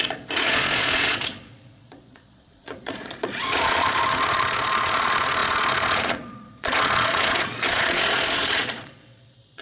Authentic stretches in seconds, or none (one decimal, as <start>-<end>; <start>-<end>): none